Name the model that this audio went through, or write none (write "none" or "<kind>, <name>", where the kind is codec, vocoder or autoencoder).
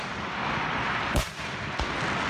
vocoder, BigVGAN v2